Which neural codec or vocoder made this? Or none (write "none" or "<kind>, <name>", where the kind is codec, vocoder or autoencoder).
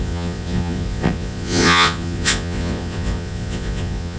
vocoder, Vocos